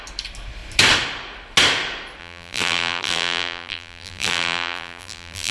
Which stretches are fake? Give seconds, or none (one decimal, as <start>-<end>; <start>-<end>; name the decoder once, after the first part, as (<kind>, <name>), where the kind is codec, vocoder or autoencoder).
2.2-5.5 (vocoder, BigVGAN v2)